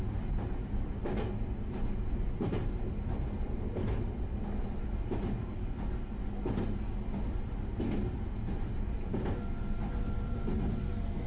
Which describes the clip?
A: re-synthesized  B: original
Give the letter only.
B